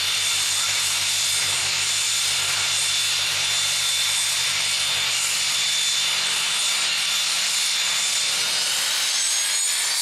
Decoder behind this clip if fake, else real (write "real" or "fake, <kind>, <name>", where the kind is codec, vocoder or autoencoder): fake, vocoder, BigVGAN v2